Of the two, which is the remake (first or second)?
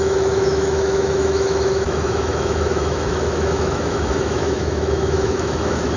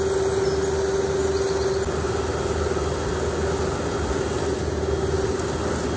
first